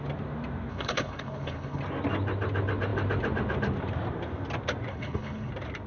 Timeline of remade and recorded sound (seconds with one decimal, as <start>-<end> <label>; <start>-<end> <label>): 0.0-0.7 recorded; 0.7-1.8 remade; 1.8-4.9 recorded; 4.9-5.5 remade; 5.5-5.9 recorded